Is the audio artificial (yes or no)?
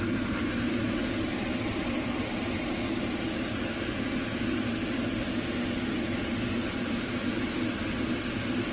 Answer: no